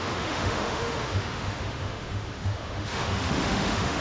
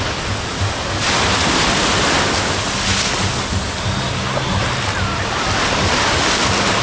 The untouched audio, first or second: second